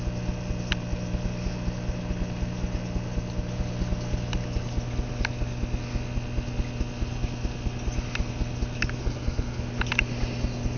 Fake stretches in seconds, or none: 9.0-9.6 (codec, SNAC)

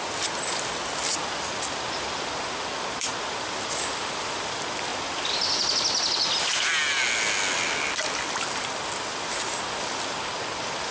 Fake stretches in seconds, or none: none

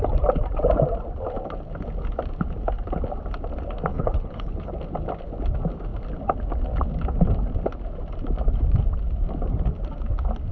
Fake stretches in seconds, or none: 3.9-4.7 (codec, HILCodec)

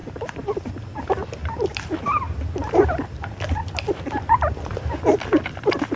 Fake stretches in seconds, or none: 0.0-0.7 (vocoder, BigVGAN v2); 1.2-4.8